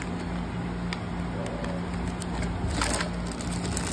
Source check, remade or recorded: recorded